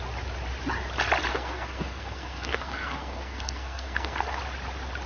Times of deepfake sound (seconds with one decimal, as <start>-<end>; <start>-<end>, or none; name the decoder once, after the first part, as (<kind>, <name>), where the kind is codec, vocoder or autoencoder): 1.3-4.4 (codec, SNAC)